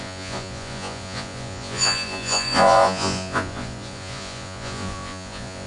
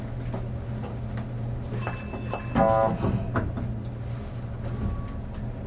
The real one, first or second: second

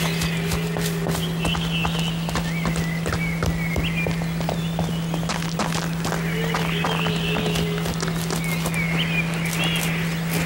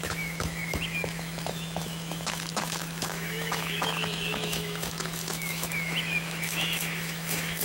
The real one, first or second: first